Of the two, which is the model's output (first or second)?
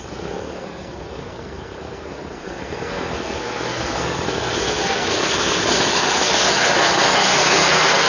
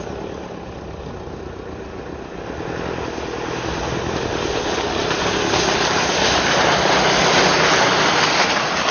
first